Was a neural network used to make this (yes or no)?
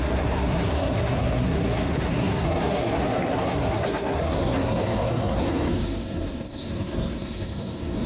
yes